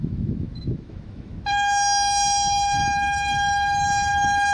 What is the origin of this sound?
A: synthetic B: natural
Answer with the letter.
A